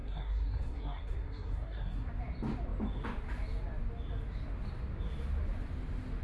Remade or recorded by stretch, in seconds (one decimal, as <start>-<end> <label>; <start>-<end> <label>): 0.0-2.1 remade; 2.1-6.2 recorded